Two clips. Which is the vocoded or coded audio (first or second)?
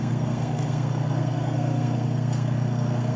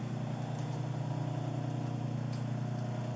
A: first